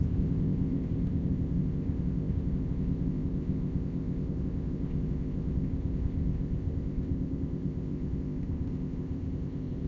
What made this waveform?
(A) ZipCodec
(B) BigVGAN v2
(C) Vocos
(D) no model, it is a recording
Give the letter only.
A